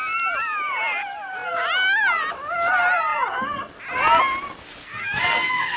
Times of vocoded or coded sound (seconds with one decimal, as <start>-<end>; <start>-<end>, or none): 4.8-5.8